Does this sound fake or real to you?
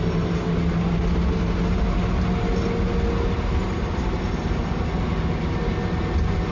real